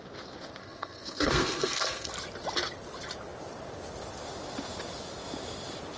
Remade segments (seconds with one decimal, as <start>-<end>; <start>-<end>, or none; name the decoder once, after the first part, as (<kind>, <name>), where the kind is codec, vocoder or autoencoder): 0.6-2.1 (codec, SNAC)